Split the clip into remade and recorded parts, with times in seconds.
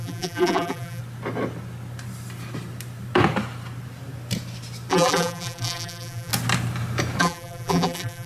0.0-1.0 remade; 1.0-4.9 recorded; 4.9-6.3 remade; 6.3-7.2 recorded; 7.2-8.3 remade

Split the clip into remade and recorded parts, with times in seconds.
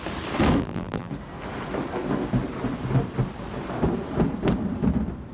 0.0-0.6 recorded; 0.6-1.1 remade; 1.1-5.3 recorded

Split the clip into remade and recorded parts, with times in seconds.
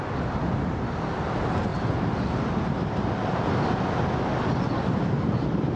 0.0-1.7 recorded; 1.7-2.4 remade; 2.4-5.8 recorded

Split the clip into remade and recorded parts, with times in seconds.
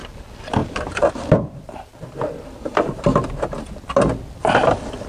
0.0-0.6 recorded; 0.6-1.1 remade; 1.1-5.1 recorded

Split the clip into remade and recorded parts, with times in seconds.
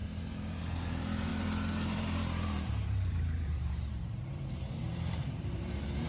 0.0-6.1 remade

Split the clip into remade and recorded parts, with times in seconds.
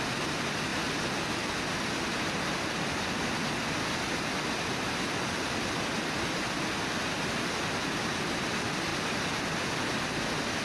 0.0-8.9 recorded; 8.9-10.2 remade; 10.2-10.6 recorded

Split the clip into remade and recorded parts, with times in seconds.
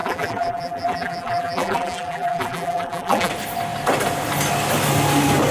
0.0-3.3 remade; 3.3-5.5 recorded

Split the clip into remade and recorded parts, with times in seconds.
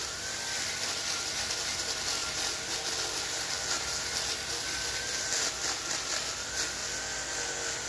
0.0-2.2 remade; 2.2-4.0 recorded; 4.0-6.8 remade; 6.8-7.9 recorded